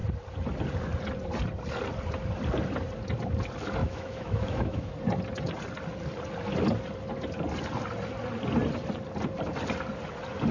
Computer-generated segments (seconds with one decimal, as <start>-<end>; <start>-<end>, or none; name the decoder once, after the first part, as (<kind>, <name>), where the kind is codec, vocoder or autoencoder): 3.8-4.9 (autoencoder, DAC-VAE)